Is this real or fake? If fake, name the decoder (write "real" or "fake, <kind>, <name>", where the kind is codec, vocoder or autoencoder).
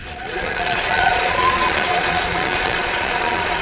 fake, vocoder, Vocos